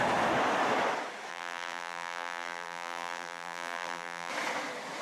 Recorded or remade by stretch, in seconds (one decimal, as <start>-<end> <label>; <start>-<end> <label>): 0.0-1.3 recorded; 1.3-4.3 remade; 4.3-5.0 recorded

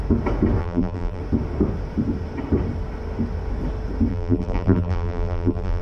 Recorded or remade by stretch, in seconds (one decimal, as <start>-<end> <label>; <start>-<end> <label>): 0.0-0.6 recorded; 0.6-1.2 remade; 1.2-4.1 recorded; 4.1-5.8 remade

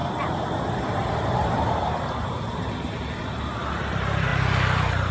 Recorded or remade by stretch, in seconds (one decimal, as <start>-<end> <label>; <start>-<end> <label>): 0.0-2.7 remade; 2.7-5.1 recorded

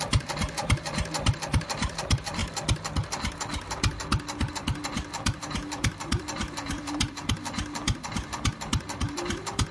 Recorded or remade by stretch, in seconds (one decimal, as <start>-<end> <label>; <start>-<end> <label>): 0.0-2.4 remade; 2.4-4.5 recorded; 4.5-9.7 remade